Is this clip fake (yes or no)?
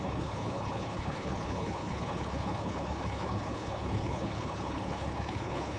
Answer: yes